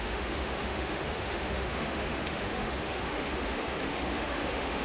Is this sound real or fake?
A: fake